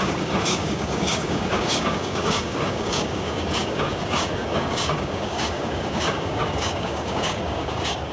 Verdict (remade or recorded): remade